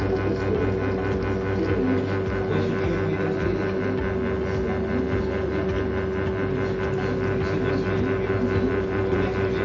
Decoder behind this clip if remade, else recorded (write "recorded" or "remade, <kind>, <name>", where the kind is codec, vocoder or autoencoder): recorded